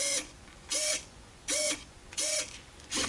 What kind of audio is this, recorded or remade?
remade